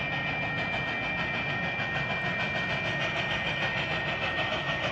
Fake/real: real